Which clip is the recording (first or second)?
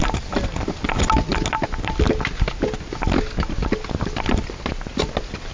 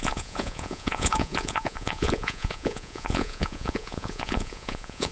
first